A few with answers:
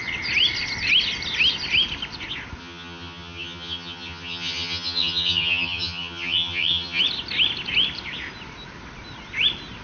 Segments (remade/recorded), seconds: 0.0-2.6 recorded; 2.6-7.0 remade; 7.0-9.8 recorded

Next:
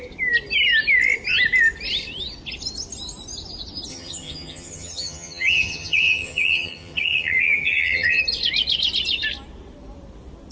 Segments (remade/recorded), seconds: 0.0-3.9 recorded; 3.9-8.2 remade; 8.2-10.5 recorded

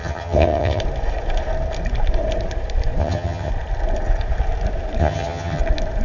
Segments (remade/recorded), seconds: 0.0-0.8 remade; 0.8-3.0 recorded; 3.0-3.5 remade; 3.5-5.0 recorded; 5.0-5.6 remade; 5.6-6.0 recorded

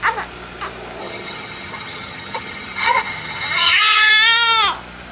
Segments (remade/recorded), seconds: 0.0-1.0 recorded; 1.0-4.1 remade; 4.1-5.1 recorded

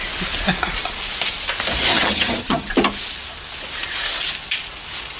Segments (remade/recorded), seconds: 0.0-1.9 recorded; 1.9-2.7 remade; 2.7-5.2 recorded

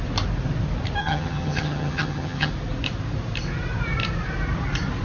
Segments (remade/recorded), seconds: 0.0-1.0 recorded; 1.0-2.5 remade; 2.5-5.0 recorded

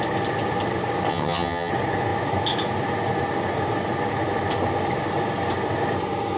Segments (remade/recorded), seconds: 0.0-1.1 recorded; 1.1-1.7 remade; 1.7-6.4 recorded

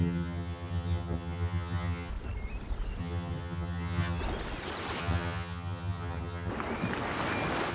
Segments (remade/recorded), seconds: 0.0-2.1 remade; 2.1-3.0 recorded; 3.0-4.2 remade; 4.2-5.0 recorded; 5.0-6.5 remade; 6.5-7.7 recorded